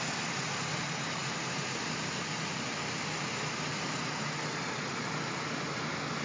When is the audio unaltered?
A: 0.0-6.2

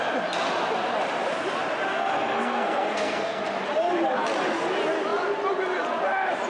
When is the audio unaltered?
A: 0.0-1.9; 3.4-6.5

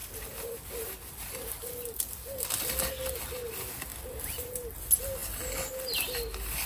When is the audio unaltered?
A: 0.0-6.7

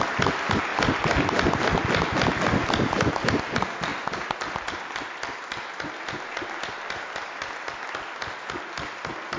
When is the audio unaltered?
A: 0.0-9.4

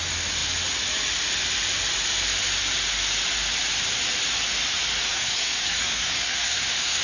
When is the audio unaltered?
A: 0.0-5.1

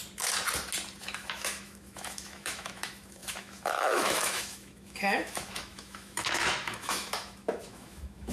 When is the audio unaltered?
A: 0.0-1.0

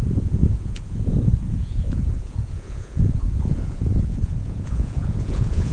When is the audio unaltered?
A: none

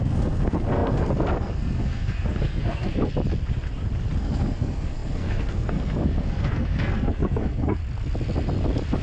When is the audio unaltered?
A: 3.1-4.2; 7.8-9.0